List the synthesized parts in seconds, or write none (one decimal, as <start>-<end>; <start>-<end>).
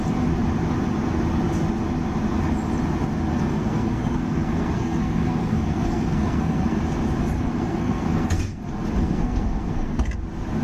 3.3-6.8; 7.2-8.6; 9.0-10.1